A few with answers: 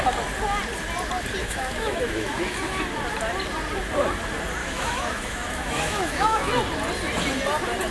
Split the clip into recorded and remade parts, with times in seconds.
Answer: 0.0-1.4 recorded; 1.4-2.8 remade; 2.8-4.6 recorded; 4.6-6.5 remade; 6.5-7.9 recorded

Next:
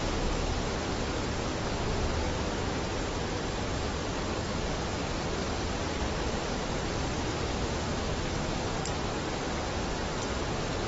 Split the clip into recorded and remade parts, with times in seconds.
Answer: 0.0-7.5 recorded; 7.5-8.2 remade; 8.2-10.9 recorded

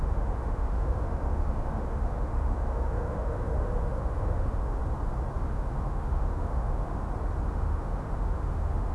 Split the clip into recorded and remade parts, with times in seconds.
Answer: 0.0-4.8 remade; 4.8-5.4 recorded; 5.4-7.0 remade; 7.0-7.5 recorded; 7.5-8.9 remade